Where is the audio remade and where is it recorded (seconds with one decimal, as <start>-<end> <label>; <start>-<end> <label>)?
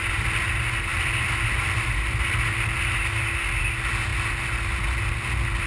0.0-5.7 recorded